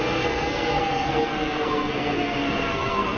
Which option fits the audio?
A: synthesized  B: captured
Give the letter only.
A